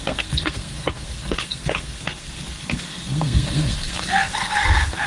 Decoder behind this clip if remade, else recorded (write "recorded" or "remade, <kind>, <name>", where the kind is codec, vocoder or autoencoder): remade, codec, SNAC